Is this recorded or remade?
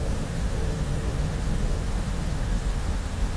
remade